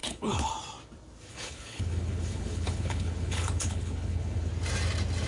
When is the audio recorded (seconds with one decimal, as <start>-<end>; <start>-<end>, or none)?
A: 0.5-1.3; 4.5-5.3